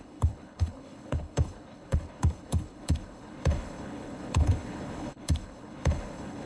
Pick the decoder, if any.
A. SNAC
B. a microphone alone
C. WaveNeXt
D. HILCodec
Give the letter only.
D